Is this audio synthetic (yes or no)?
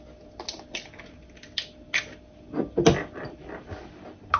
no